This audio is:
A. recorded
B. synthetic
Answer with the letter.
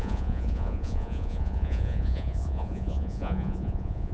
B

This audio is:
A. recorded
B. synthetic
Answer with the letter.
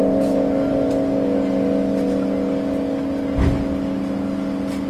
A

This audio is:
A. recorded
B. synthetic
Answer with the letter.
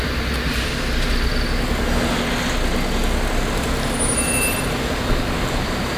A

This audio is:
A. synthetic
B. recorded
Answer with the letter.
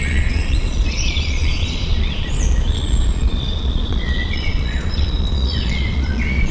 A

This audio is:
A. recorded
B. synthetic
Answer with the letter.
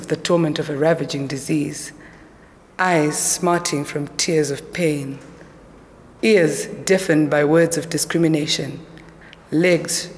A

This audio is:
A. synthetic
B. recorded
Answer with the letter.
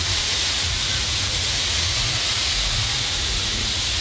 A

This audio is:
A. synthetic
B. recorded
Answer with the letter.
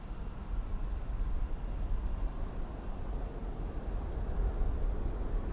B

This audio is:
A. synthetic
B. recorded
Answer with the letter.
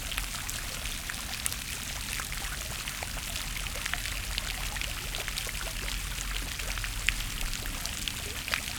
B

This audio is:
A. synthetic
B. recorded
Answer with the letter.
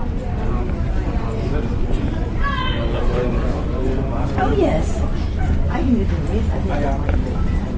B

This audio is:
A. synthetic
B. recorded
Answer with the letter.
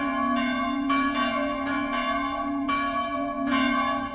A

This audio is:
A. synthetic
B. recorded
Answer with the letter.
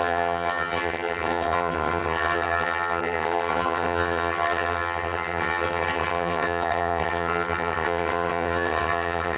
A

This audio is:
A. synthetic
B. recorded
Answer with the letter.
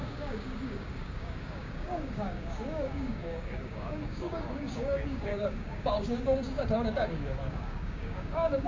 A